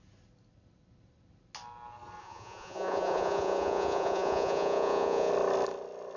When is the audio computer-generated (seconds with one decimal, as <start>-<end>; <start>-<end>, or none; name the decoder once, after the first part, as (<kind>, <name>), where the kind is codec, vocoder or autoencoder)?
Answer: 2.2-5.3 (vocoder, Vocos)